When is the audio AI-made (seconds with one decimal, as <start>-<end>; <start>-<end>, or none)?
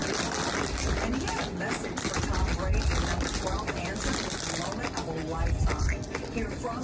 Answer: none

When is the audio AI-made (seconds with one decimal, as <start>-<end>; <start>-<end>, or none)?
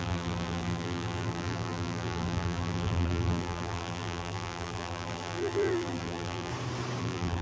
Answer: 0.0-6.5; 7.0-7.4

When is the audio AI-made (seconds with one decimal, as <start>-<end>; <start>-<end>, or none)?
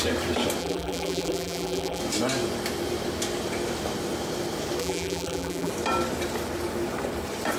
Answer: 0.6-2.0; 4.8-5.7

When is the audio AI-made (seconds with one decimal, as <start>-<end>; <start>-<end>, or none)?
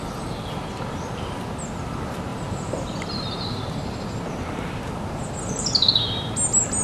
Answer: 2.3-3.6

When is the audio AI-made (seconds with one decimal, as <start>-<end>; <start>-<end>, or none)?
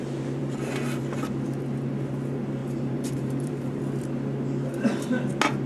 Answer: 2.6-3.8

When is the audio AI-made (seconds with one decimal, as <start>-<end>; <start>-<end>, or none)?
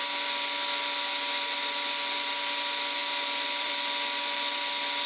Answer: 0.0-2.3; 3.0-3.7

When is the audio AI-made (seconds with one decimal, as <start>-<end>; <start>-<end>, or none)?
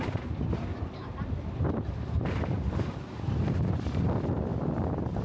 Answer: 0.7-3.8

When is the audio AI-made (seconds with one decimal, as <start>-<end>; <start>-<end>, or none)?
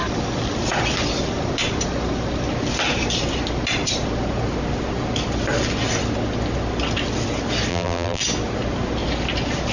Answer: 7.7-8.2